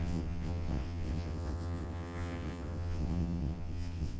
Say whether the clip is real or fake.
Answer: fake